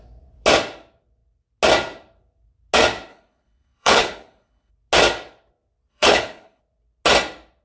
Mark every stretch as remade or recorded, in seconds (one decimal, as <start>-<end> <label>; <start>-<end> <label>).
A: 0.0-3.1 recorded; 3.1-4.7 remade; 4.7-5.9 recorded; 5.9-6.6 remade; 6.6-7.6 recorded